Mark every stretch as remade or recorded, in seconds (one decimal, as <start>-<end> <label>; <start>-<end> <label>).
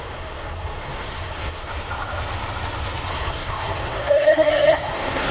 0.0-1.7 remade; 1.7-3.1 recorded; 3.1-5.3 remade